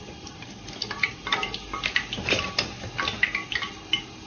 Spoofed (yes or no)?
no